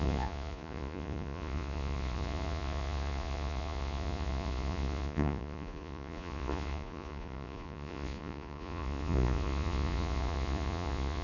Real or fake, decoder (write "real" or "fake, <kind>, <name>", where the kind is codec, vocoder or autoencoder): fake, vocoder, Vocos